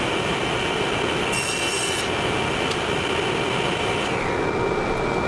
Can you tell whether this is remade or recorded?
recorded